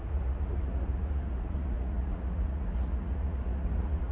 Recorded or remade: remade